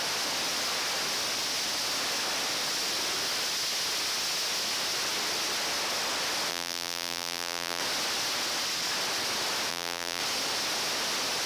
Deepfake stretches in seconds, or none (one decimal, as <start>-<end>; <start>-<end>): 6.5-7.8; 9.7-10.2